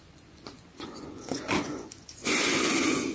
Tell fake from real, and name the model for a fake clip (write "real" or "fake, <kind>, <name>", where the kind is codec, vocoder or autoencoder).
fake, vocoder, Vocos